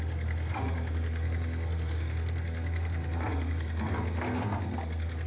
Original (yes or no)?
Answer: no